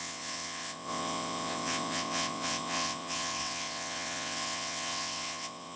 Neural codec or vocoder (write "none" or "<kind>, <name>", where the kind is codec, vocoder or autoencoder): vocoder, WaveNeXt